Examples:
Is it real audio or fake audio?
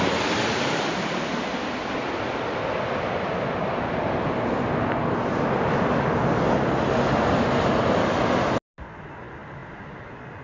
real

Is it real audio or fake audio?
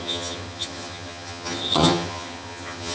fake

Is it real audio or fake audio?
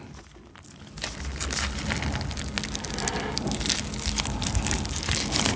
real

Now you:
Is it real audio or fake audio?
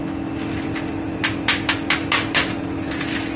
real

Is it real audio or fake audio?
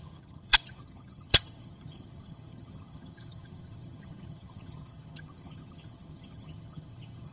fake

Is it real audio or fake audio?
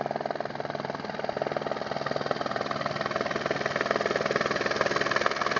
real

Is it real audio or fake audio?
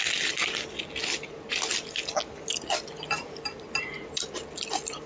real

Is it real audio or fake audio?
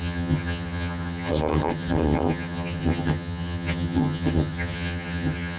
fake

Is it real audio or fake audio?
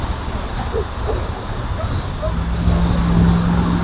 real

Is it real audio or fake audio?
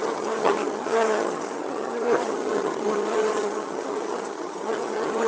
fake